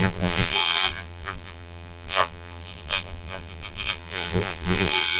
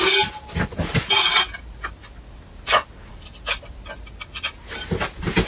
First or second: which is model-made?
first